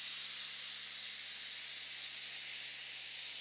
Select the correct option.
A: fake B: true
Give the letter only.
B